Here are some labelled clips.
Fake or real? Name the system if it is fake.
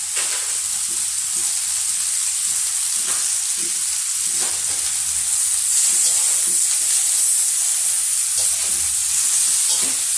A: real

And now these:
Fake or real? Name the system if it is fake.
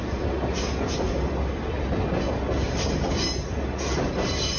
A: real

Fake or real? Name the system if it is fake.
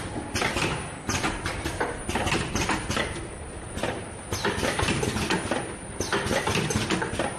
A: real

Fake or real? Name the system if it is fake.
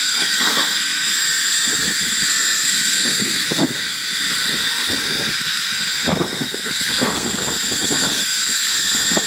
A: fake, codec, SNAC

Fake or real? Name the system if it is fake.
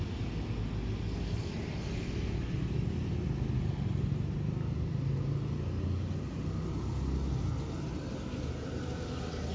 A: real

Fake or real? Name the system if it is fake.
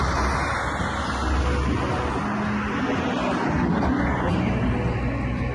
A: real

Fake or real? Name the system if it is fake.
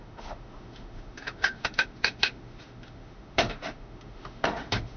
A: fake, autoencoder, DAC-VAE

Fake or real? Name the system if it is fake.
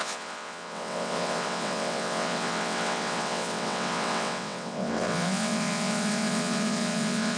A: fake, vocoder, WaveNeXt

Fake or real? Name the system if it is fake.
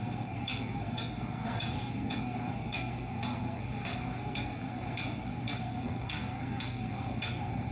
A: fake, codec, SNAC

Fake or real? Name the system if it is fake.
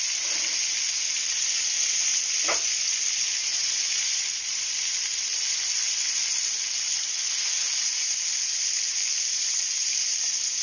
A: real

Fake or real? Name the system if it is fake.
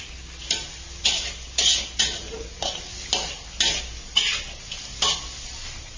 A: real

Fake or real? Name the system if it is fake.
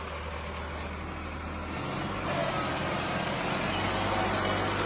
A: real